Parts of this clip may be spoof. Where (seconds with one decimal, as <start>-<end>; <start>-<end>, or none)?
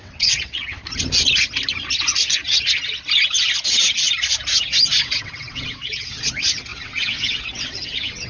0.0-0.8; 5.0-8.3